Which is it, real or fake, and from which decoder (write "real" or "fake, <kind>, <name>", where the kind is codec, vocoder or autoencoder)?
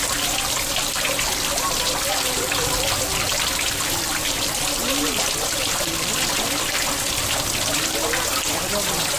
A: real